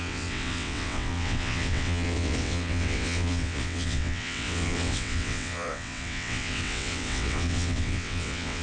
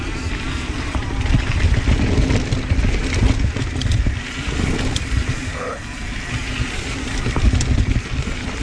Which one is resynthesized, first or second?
first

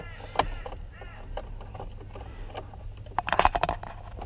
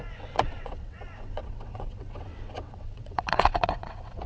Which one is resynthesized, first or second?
second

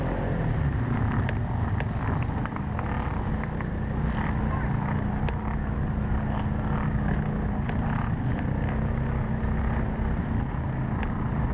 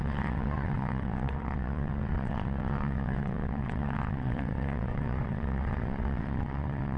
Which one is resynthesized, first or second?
second